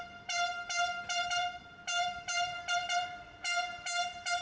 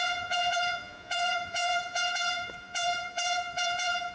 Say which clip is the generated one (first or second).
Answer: second